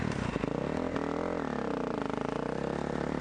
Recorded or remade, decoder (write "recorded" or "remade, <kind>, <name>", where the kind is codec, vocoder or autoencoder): recorded